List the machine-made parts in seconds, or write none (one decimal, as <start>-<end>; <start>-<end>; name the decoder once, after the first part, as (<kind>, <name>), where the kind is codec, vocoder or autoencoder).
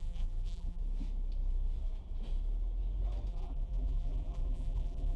0.0-0.8 (vocoder, BigVGAN v2); 3.3-5.2